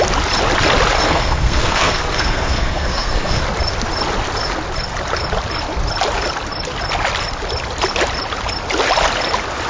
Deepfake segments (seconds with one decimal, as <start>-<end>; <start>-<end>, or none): 1.0-3.4